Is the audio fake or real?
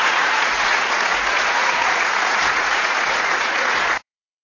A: fake